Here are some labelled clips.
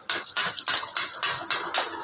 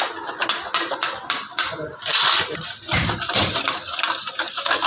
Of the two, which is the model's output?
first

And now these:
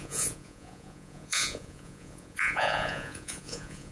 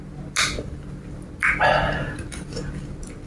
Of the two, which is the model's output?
first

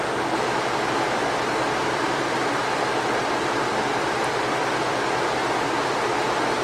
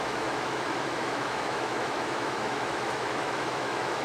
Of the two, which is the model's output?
second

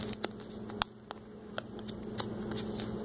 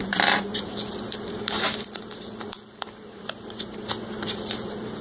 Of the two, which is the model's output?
second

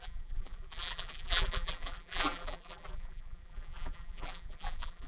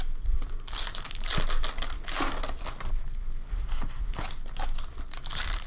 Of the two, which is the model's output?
first